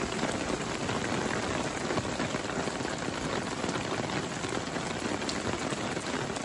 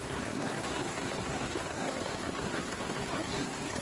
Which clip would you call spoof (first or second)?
second